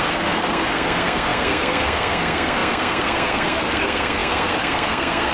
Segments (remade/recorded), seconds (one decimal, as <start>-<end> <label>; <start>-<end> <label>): 0.0-5.3 remade